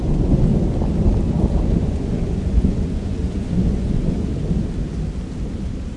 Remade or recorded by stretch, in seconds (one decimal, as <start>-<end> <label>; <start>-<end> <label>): 0.0-0.5 remade; 0.5-1.8 recorded; 1.8-4.3 remade; 4.3-6.0 recorded